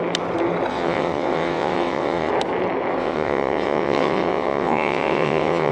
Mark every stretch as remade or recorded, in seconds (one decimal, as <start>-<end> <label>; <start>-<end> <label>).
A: 0.0-0.7 recorded; 0.7-2.3 remade; 2.3-3.0 recorded; 3.0-5.7 remade

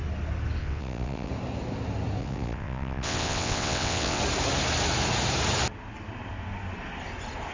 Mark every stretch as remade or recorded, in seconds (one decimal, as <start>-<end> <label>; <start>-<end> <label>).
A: 0.0-0.6 recorded; 0.6-1.3 remade; 1.3-2.2 recorded; 2.2-4.2 remade; 4.2-7.5 recorded

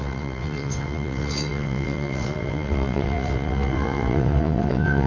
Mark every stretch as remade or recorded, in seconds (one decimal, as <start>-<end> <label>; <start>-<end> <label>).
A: 0.0-5.1 remade

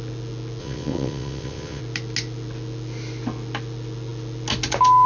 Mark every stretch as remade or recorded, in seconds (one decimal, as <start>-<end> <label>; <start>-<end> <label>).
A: 0.0-0.6 recorded; 0.6-1.8 remade; 1.8-5.1 recorded

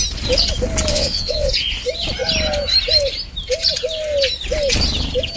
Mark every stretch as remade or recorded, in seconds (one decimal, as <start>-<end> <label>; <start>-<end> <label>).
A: 0.0-0.9 recorded; 0.9-1.5 remade; 1.5-5.4 recorded

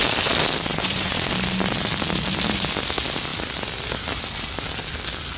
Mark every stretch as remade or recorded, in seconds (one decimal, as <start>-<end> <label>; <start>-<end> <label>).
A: 0.0-0.7 recorded; 0.7-1.3 remade; 1.3-5.4 recorded

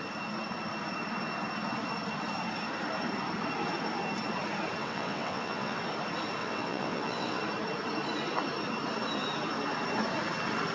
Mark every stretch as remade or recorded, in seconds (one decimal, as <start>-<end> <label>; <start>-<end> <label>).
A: 0.0-4.8 recorded; 4.8-5.8 remade; 5.8-6.4 recorded; 6.4-7.4 remade; 7.4-10.7 recorded